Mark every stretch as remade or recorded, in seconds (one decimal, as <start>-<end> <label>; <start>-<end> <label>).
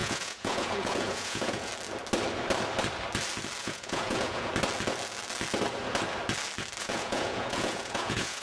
0.0-1.7 remade; 1.7-3.6 recorded; 3.6-4.5 remade; 4.5-6.8 recorded; 6.8-8.4 remade